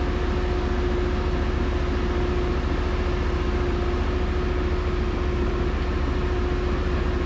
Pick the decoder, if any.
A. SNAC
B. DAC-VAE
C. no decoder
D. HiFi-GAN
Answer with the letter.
C